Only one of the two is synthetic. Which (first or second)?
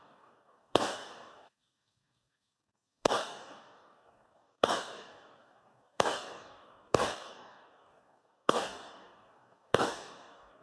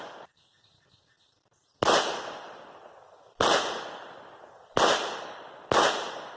first